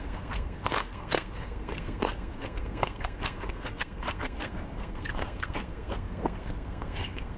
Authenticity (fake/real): fake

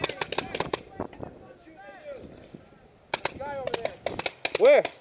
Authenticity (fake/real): real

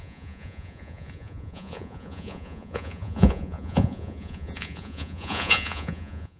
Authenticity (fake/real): fake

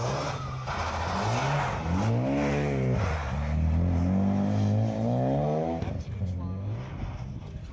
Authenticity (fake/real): real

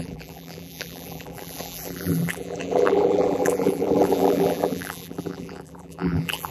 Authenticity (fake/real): fake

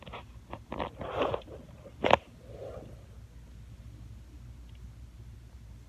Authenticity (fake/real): real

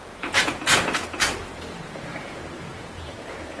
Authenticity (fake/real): fake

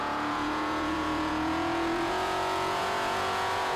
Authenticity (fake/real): fake